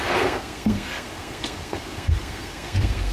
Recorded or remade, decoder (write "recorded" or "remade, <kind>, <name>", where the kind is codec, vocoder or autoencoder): remade, codec, SNAC